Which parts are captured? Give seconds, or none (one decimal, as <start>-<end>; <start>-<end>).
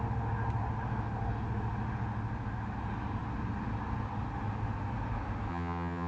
0.0-5.5